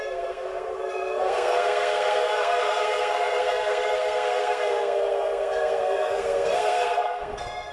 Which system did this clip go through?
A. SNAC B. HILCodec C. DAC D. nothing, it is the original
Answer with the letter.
A